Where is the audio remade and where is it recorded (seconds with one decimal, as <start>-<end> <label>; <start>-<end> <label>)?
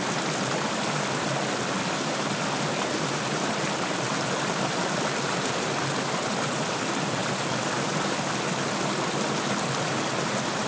0.0-10.7 recorded